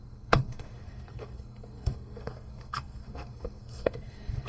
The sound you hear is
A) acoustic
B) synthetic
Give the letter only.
B